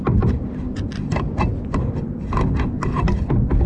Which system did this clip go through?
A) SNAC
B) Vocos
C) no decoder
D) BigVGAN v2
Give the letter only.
C